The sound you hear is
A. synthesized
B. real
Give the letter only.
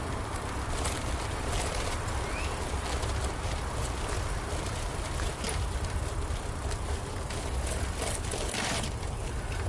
B